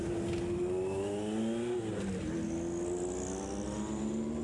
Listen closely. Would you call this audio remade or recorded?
recorded